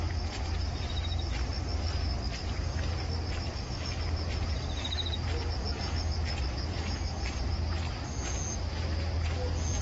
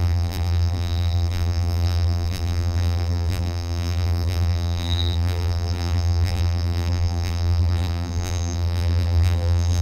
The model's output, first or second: second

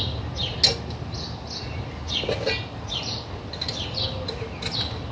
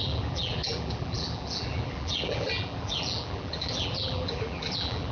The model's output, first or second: second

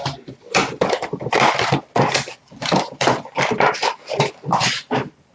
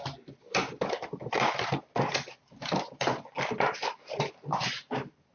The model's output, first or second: first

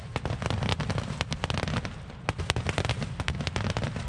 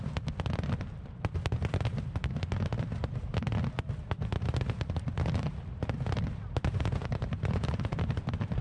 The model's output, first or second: second